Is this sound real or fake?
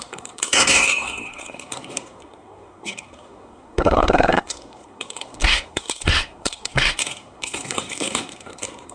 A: fake